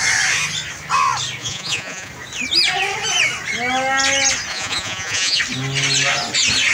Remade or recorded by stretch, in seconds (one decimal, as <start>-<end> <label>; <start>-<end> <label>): 0.0-1.4 recorded; 1.4-2.1 remade; 2.1-4.5 recorded; 4.5-5.4 remade; 5.4-6.7 recorded